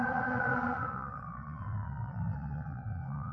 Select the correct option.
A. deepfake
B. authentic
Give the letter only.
A